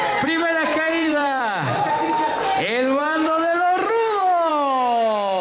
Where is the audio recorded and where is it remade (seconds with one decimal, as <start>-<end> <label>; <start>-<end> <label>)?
0.0-0.7 recorded; 0.7-2.4 remade; 2.4-3.0 recorded; 3.0-4.5 remade; 4.5-5.4 recorded